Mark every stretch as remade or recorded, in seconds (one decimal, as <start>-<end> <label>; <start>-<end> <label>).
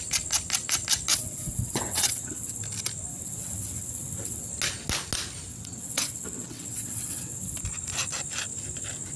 0.0-1.1 recorded; 1.1-2.6 remade; 2.6-3.1 recorded; 3.1-4.5 remade; 4.5-5.5 recorded; 5.5-7.6 remade; 7.6-9.2 recorded